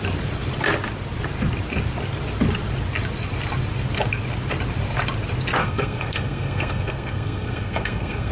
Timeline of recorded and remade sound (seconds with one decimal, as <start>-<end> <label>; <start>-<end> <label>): 0.0-5.6 recorded; 5.6-8.3 remade